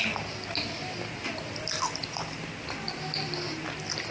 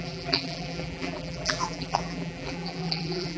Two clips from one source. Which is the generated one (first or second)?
second